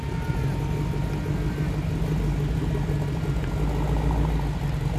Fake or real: real